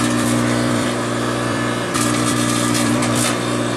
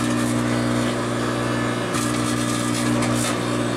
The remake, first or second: first